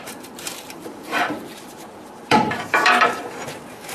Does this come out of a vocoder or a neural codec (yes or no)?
yes